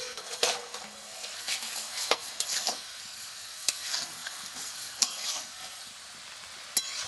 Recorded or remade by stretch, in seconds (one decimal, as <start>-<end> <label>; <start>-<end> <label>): 0.0-5.9 remade; 5.9-7.1 recorded